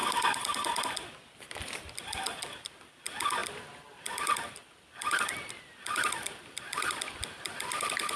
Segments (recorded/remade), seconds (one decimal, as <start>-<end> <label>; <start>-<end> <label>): 0.0-0.8 remade; 0.8-3.4 recorded; 3.4-7.0 remade; 7.0-8.2 recorded